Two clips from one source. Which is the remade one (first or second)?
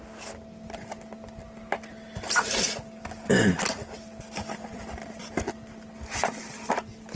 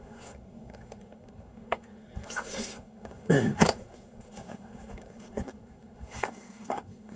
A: second